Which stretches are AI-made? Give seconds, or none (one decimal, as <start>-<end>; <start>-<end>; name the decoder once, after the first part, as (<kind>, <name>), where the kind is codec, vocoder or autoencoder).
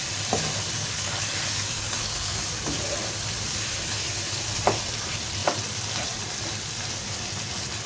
0.8-2.5 (codec, DAC)